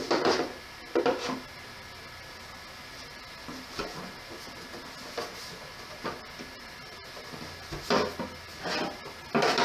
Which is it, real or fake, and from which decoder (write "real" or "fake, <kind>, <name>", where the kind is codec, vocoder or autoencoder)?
real